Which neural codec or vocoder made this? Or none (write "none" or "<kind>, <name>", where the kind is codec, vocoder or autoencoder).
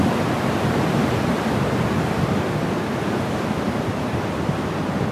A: none